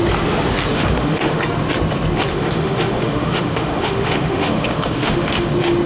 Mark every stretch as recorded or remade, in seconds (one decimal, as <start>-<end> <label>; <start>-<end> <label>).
0.0-0.7 recorded; 0.7-1.4 remade; 1.4-2.3 recorded; 2.3-5.5 remade; 5.5-5.9 recorded